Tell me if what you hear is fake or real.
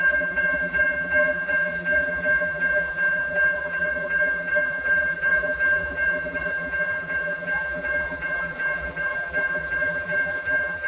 fake